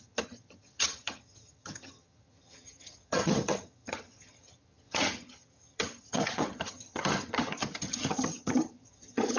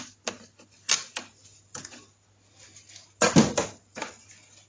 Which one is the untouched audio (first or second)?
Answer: second